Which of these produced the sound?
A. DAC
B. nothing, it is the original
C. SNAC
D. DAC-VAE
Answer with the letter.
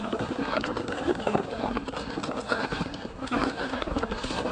C